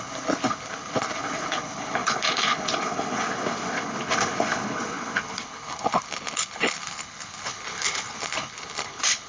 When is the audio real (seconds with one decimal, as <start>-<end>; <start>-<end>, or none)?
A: none